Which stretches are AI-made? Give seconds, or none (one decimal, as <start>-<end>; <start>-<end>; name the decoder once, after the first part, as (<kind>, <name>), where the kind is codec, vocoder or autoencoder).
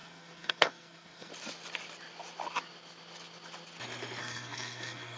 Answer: 0.0-1.3 (codec, SNAC); 4.2-5.2